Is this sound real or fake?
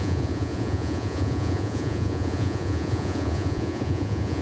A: fake